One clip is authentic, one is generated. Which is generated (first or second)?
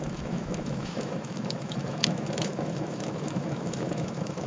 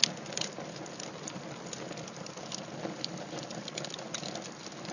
first